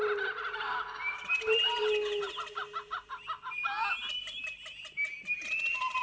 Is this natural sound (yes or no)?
yes